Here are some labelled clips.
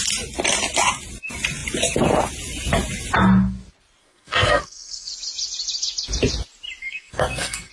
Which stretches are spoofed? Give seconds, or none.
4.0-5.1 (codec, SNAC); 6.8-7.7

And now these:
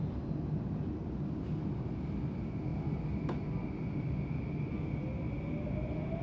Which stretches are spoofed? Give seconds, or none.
none

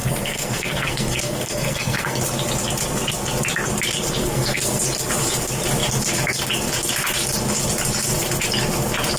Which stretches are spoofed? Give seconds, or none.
0.0-2.2 (codec, SNAC); 4.2-4.8

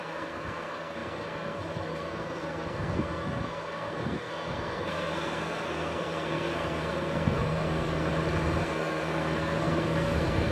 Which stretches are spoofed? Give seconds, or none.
0.0-8.1 (codec, SNAC); 8.6-10.5